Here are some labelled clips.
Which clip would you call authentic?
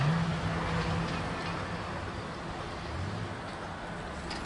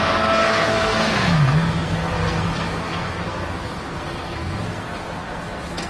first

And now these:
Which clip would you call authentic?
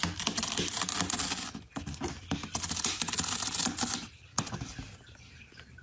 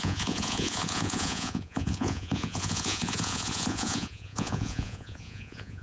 first